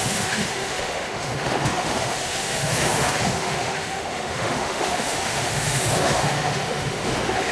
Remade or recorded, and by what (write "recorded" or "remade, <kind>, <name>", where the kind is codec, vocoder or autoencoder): remade, autoencoder, DAC-VAE